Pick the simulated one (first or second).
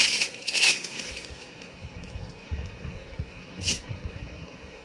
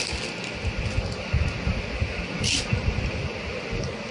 first